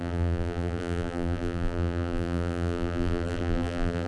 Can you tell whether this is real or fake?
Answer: fake